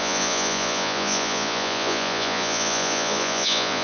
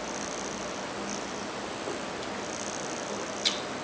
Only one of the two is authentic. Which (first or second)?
second